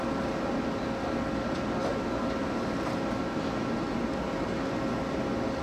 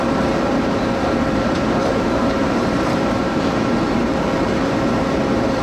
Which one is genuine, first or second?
first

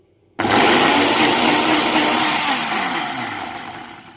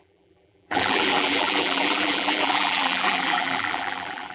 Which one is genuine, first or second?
first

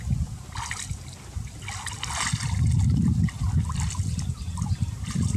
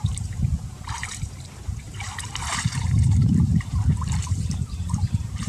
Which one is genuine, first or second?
first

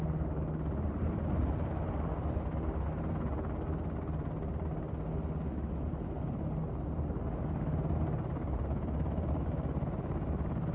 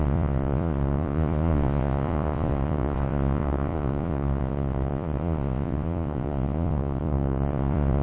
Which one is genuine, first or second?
first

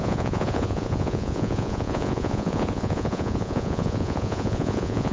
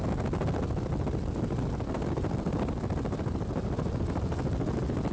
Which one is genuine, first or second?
second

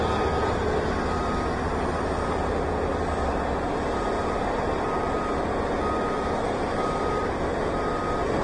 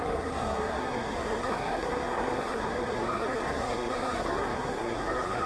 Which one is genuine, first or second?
first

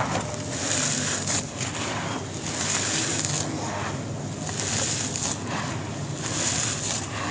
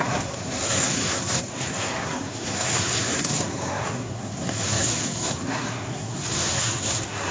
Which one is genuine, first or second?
first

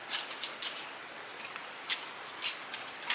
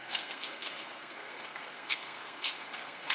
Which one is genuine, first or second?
first